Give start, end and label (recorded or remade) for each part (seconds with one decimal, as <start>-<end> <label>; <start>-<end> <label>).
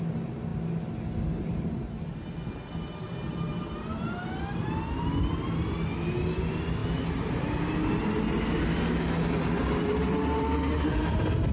0.0-11.5 recorded